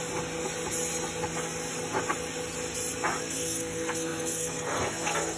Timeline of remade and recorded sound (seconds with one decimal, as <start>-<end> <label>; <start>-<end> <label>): 0.0-3.2 recorded; 3.2-5.4 remade